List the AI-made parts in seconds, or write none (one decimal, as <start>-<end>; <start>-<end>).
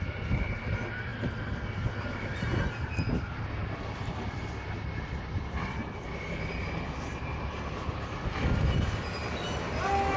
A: none